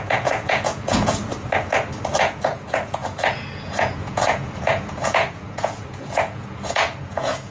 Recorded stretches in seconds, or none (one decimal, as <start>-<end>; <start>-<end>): 1.3-2.2